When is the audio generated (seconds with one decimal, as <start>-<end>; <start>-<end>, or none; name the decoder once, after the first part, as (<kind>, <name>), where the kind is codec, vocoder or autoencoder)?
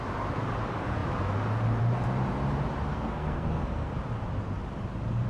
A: 2.9-3.9 (codec, SNAC)